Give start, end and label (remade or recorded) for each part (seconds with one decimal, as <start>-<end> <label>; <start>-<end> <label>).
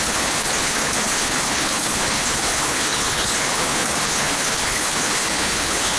0.0-6.0 remade